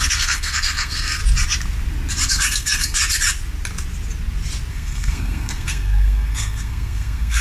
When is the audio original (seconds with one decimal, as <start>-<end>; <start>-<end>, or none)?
1.2-2.3; 3.0-4.7